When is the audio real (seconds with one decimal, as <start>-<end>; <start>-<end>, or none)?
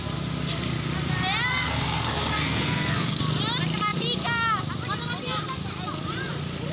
0.0-1.5; 3.2-6.7